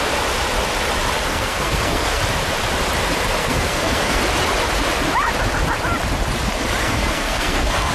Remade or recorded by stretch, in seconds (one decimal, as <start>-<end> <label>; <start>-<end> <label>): 0.0-1.3 recorded; 1.3-2.2 remade; 2.2-3.4 recorded; 3.4-4.2 remade; 4.2-6.8 recorded; 6.8-7.9 remade